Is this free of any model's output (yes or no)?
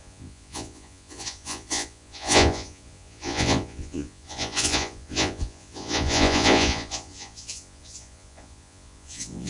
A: no